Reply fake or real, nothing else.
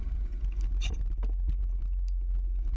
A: real